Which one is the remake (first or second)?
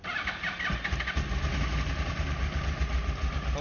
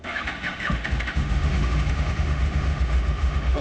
second